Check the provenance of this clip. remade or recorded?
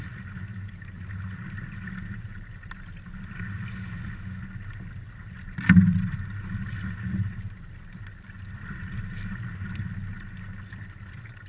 recorded